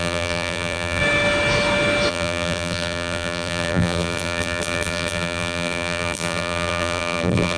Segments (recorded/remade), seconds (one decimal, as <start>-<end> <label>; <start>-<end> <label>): 0.0-1.0 remade; 1.0-2.1 recorded; 2.1-7.6 remade